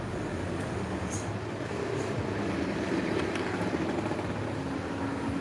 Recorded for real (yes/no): yes